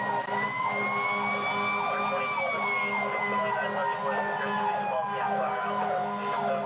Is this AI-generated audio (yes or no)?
no